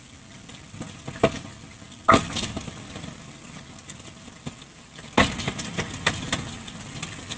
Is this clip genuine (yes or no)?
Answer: yes